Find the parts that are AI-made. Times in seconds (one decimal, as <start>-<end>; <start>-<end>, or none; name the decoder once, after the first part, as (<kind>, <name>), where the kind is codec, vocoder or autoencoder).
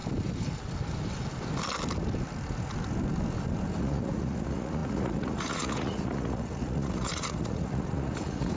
3.8-8.6 (vocoder, Vocos)